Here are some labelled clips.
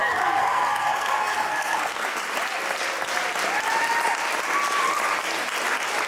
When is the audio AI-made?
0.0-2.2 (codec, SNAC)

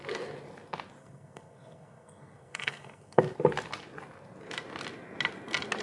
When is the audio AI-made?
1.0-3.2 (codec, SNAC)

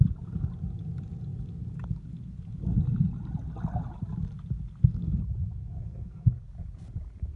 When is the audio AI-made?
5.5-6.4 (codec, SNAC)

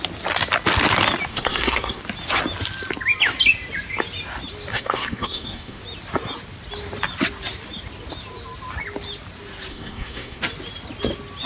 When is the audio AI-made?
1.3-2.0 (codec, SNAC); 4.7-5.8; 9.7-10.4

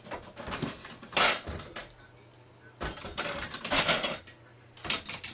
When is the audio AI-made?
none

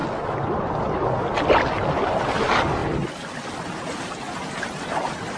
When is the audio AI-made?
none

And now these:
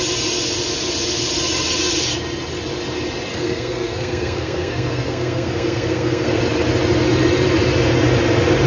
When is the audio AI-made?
3.3-6.4 (codec, SNAC)